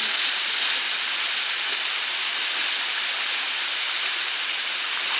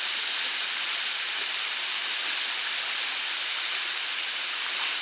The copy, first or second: second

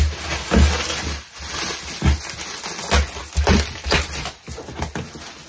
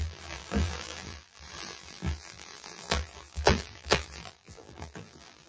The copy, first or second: second